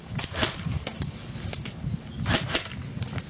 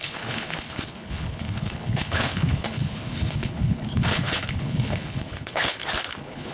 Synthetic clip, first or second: second